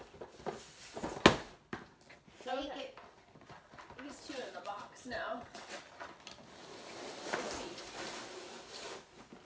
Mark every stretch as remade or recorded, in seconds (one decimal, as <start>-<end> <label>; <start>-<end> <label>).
0.0-4.4 recorded; 4.4-5.8 remade; 5.8-9.4 recorded